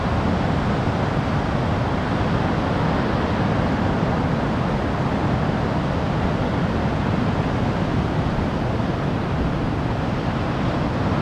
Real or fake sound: real